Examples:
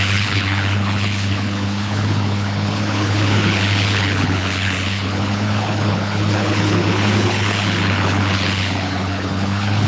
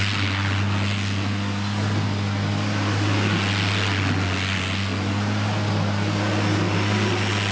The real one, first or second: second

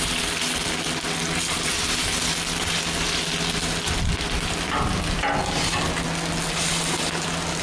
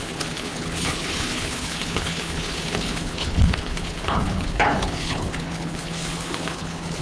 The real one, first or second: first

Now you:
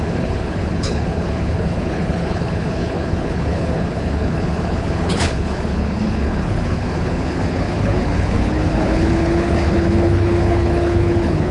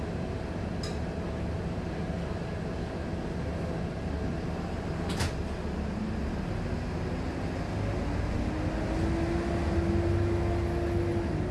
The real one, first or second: second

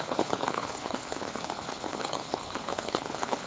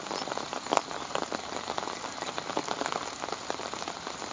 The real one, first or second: second